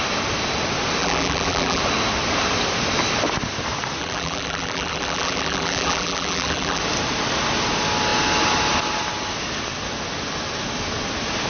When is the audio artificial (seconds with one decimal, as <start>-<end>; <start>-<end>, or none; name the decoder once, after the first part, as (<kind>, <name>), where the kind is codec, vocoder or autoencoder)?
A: 1.0-1.8 (vocoder, BigVGAN v2); 4.0-6.8

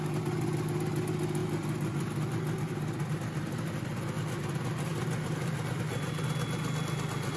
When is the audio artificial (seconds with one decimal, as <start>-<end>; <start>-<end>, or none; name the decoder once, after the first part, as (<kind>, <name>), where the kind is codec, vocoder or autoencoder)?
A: 1.4-5.8 (vocoder, BigVGAN v2)